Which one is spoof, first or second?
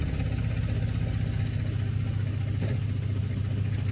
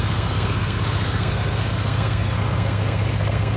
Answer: second